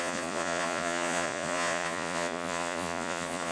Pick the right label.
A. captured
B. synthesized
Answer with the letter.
B